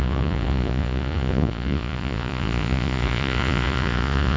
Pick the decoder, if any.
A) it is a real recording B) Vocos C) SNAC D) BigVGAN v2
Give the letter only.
B